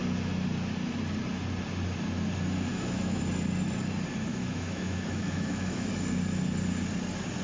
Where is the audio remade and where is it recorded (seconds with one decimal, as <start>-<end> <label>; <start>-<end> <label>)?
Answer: 0.0-2.7 recorded; 2.7-3.2 remade; 3.2-4.3 recorded; 4.3-5.9 remade; 5.9-7.4 recorded